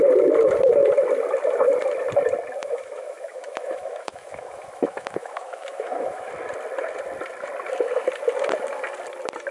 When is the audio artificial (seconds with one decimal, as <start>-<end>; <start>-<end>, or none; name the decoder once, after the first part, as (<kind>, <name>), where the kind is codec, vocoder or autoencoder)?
2.6-6.3 (autoencoder, DAC-VAE)